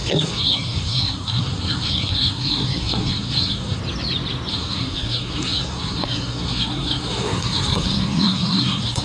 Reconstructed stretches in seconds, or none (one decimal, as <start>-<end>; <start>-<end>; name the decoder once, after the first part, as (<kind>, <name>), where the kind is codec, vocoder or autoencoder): 0.0-3.8 (codec, SNAC); 4.5-9.0